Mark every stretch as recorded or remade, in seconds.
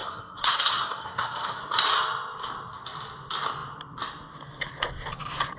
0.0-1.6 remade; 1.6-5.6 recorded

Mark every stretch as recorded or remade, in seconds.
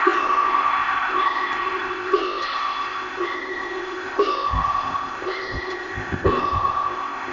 0.0-7.3 remade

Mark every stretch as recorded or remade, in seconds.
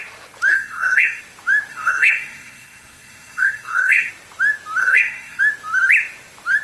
0.0-0.5 recorded; 0.5-1.2 remade; 1.2-1.7 recorded; 1.7-4.1 remade; 4.1-4.8 recorded; 4.8-5.4 remade; 5.4-6.6 recorded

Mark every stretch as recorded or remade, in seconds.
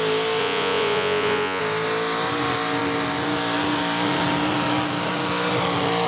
0.0-0.4 recorded; 0.4-1.6 remade; 1.6-6.1 recorded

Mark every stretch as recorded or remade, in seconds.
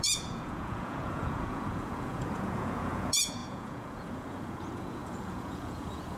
0.0-6.2 remade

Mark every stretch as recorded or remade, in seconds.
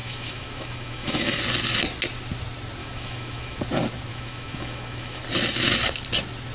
0.0-1.4 remade; 1.4-2.8 recorded; 2.8-3.6 remade; 3.6-4.1 recorded; 4.1-5.2 remade; 5.2-6.5 recorded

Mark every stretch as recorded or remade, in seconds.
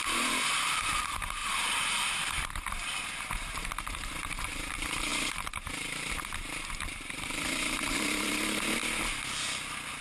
0.0-8.8 remade; 8.8-10.0 recorded